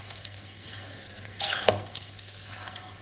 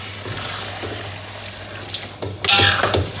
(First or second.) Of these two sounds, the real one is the second